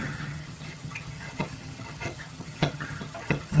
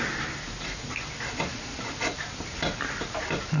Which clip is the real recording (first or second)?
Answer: second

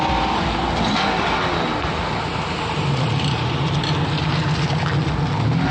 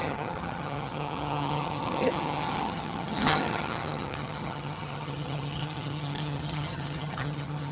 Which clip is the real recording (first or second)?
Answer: first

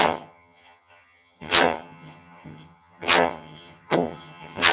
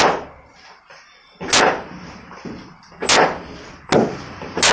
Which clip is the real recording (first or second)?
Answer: second